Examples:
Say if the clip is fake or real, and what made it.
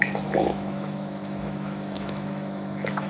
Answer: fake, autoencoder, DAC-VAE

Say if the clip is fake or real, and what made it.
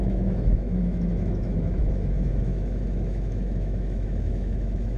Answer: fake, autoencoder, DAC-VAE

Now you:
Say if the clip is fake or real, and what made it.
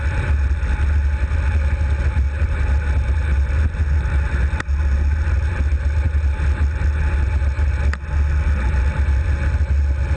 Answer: real